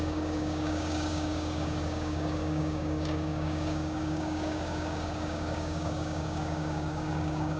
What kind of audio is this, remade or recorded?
remade